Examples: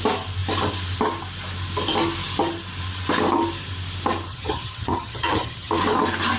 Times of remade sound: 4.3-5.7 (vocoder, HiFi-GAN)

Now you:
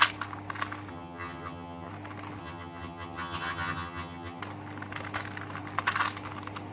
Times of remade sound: 0.9-1.9 (vocoder, HiFi-GAN); 2.4-4.4

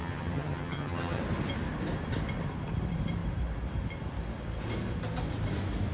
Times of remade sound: 0.0-1.2 (vocoder, HiFi-GAN)

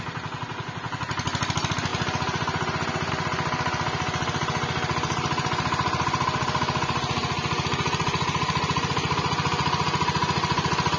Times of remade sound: none

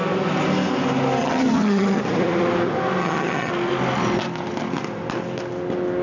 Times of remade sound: 1.2-2.0 (vocoder, HiFi-GAN); 3.0-3.5